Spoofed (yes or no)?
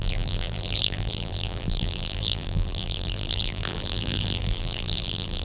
yes